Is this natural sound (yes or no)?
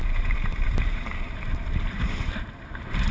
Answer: no